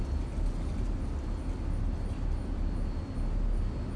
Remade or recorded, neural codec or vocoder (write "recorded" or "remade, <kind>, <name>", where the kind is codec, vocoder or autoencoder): recorded